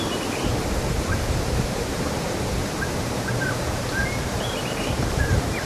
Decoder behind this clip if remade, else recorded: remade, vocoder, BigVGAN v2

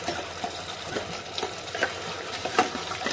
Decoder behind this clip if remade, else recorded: remade, vocoder, BigVGAN v2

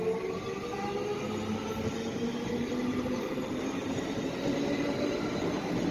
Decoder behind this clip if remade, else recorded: recorded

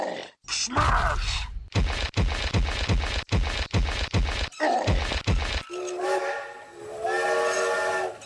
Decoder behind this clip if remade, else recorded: recorded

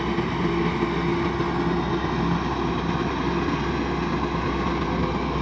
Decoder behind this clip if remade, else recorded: recorded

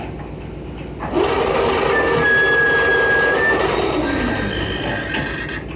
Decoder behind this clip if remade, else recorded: recorded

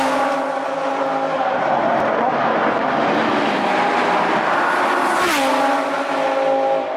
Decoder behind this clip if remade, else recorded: recorded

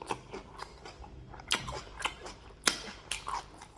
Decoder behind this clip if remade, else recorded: remade, vocoder, BigVGAN v2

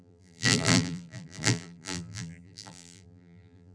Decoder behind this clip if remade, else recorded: remade, vocoder, BigVGAN v2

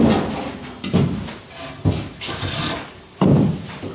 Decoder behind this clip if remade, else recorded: recorded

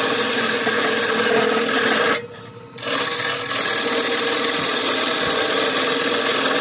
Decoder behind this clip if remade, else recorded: recorded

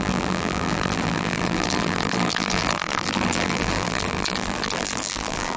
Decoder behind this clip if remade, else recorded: remade, vocoder, BigVGAN v2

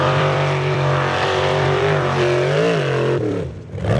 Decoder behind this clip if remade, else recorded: remade, vocoder, BigVGAN v2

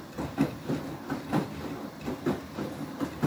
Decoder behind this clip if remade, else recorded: remade, vocoder, BigVGAN v2